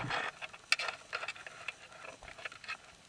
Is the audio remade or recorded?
recorded